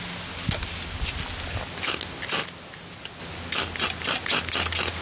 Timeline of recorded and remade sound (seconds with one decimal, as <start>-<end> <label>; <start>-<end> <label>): 0.0-5.0 recorded